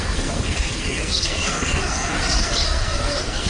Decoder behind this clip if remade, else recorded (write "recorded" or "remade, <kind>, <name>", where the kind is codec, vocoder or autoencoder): remade, codec, SNAC